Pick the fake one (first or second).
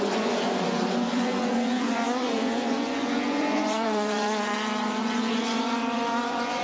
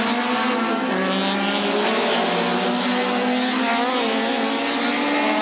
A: first